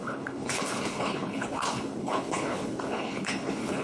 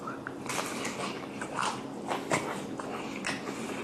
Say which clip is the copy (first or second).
first